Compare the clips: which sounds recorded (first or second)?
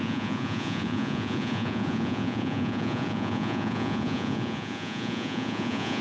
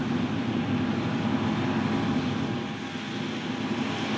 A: second